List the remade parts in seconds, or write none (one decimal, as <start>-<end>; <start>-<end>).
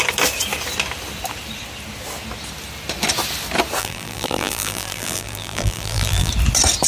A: 3.8-6.3